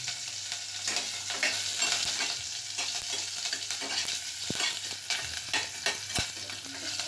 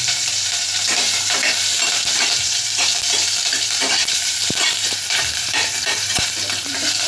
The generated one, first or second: second